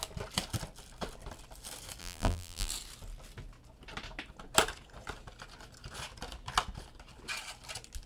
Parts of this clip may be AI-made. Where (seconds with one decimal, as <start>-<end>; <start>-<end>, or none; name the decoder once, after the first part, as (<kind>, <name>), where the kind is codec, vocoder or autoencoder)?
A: 2.0-2.7 (vocoder, BigVGAN v2)